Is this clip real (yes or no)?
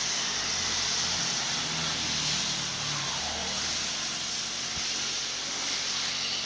yes